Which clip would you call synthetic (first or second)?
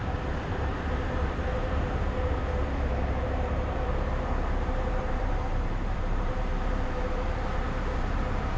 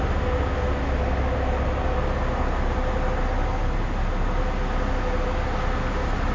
first